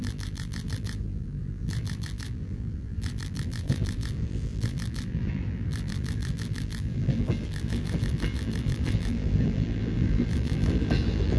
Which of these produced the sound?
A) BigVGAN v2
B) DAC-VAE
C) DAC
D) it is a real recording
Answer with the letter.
A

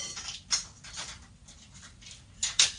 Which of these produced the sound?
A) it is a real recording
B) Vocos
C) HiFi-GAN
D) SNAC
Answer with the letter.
A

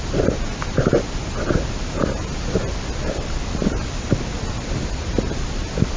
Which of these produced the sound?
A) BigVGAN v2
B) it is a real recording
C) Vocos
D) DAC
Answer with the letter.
B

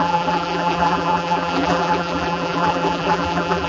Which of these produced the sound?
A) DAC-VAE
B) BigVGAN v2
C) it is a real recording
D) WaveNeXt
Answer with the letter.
B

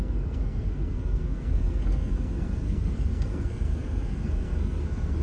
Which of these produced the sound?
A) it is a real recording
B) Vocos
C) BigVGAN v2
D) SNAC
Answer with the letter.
D